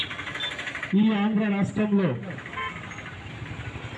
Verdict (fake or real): real